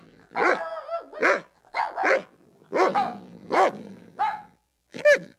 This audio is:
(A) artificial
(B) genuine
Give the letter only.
A